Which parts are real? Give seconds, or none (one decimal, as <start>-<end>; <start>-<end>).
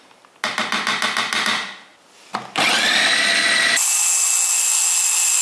0.0-5.4